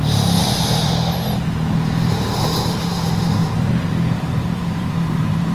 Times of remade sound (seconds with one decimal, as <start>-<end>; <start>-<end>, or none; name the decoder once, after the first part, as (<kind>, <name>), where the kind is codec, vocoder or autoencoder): 0.0-0.4 (vocoder, BigVGAN v2); 3.7-5.5